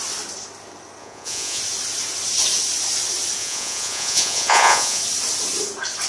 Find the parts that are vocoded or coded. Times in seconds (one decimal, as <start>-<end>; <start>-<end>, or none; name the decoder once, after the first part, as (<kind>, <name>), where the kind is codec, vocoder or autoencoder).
1.0-1.6 (vocoder, Vocos); 3.4-5.0